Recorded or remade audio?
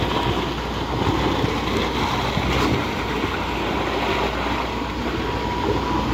recorded